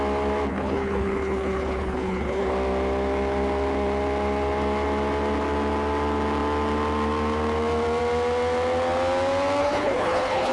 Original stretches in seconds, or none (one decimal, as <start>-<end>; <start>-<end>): 0.0-0.5; 2.5-9.6